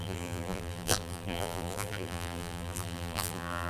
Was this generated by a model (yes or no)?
yes